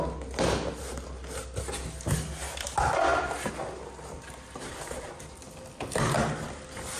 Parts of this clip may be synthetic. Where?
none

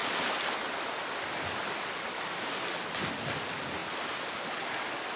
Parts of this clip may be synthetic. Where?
none

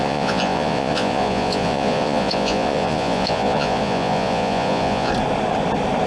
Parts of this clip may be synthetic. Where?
0.0-5.1 (vocoder, Vocos)

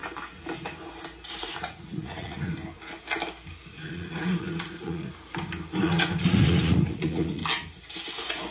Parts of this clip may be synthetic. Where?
1.4-2.5 (vocoder, Vocos); 3.7-5.1; 5.8-7.4

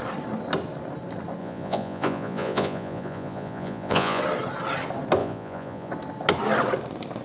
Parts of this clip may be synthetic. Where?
1.4-4.2 (vocoder, Vocos); 5.2-5.9

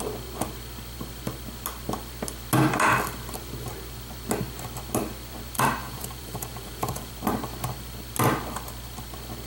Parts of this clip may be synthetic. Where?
5.8-7.1 (vocoder, Vocos)

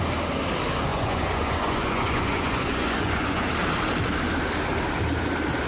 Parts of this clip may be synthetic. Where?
0.9-3.5 (vocoder, Vocos)

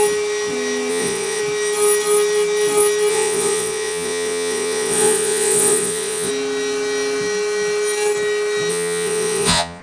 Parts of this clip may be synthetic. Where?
0.9-1.4 (vocoder, Vocos); 3.1-6.3; 8.7-9.8